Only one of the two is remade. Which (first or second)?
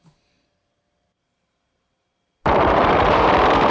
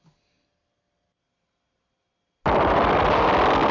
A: first